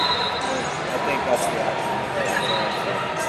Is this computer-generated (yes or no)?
no